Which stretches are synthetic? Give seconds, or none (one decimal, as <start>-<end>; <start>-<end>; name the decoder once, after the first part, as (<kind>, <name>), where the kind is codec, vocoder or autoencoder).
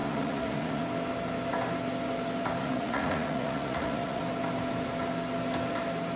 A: 0.0-0.8 (vocoder, Vocos); 2.6-4.2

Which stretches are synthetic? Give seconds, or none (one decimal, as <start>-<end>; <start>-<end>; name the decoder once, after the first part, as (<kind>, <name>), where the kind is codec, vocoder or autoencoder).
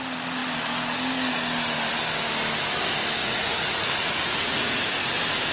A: 3.2-5.1 (vocoder, Vocos)